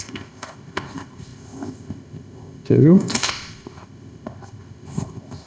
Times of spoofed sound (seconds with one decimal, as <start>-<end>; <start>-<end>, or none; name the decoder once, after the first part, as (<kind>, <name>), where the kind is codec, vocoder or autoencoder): 0.0-5.5 (codec, ZipCodec)